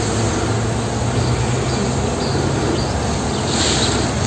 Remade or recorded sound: recorded